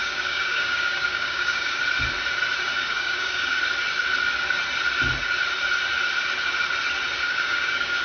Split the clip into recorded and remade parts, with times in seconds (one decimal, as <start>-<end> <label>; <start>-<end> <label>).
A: 0.0-1.8 remade; 1.8-2.7 recorded; 2.7-3.6 remade; 3.6-7.2 recorded; 7.2-8.0 remade